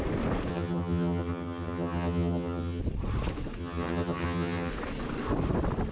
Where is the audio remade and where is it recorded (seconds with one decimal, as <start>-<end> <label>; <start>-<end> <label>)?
0.0-0.5 recorded; 0.5-2.8 remade; 2.8-3.6 recorded; 3.6-4.7 remade; 4.7-5.9 recorded